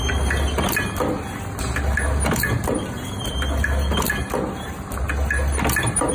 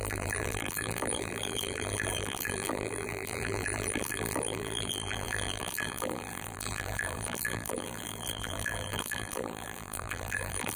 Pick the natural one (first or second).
first